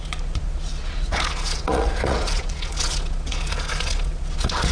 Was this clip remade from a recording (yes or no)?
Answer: yes